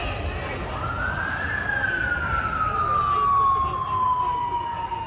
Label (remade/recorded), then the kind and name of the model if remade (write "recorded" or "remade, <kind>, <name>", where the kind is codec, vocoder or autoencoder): recorded